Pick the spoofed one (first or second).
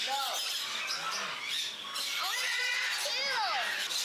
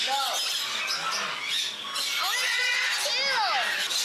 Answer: first